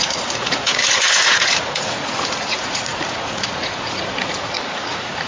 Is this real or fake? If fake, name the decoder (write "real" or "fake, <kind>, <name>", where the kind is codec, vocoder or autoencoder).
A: fake, vocoder, Vocos